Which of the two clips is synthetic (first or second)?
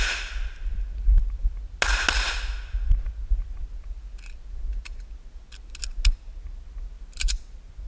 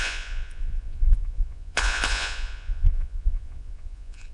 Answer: second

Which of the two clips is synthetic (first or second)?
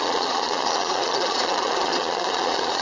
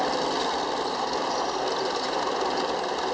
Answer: first